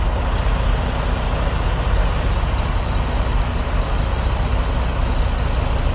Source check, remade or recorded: recorded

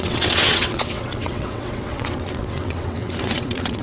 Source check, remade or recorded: remade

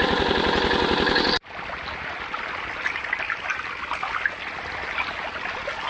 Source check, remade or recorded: recorded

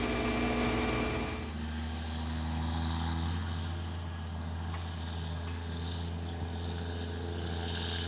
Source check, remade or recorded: recorded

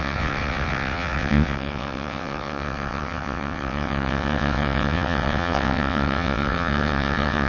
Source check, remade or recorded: remade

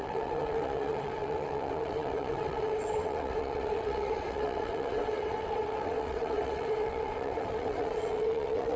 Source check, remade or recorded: remade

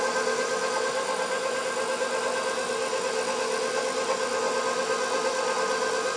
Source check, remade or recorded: recorded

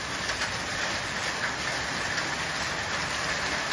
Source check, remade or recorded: recorded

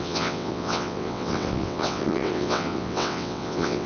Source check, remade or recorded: remade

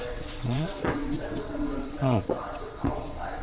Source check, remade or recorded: remade